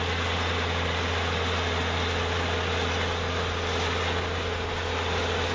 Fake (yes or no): no